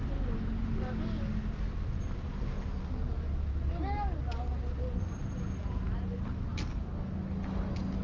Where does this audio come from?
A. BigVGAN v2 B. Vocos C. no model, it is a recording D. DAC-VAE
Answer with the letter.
C